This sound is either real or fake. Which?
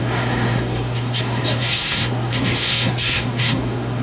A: fake